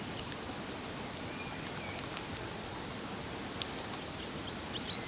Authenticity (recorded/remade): recorded